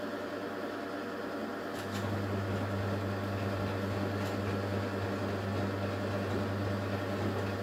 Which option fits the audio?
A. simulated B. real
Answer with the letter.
B